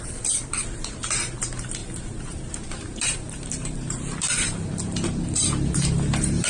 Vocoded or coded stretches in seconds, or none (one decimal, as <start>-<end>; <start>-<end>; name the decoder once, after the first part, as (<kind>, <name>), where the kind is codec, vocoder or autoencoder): 0.0-6.5 (vocoder, BigVGAN v2)